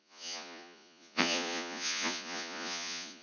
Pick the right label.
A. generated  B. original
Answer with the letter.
A